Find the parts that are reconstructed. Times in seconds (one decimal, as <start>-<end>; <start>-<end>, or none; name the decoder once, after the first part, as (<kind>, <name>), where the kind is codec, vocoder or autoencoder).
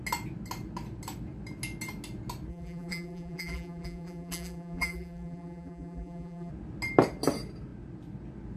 2.5-6.5 (vocoder, BigVGAN v2)